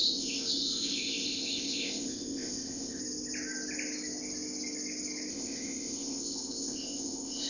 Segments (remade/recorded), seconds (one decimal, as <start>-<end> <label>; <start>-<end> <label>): 0.0-3.0 remade; 3.0-5.3 recorded; 5.3-7.5 remade